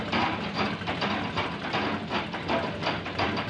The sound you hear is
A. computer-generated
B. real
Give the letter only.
A